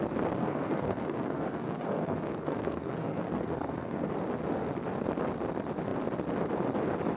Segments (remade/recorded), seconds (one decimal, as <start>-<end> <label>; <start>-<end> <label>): 0.0-0.4 recorded; 0.4-4.1 remade; 4.1-7.2 recorded